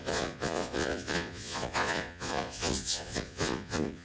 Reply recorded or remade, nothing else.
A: remade